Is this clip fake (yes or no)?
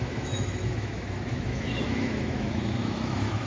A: yes